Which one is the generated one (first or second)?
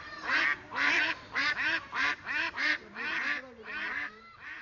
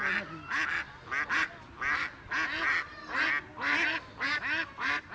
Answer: first